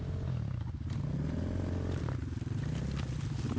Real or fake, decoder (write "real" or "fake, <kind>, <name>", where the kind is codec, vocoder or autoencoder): real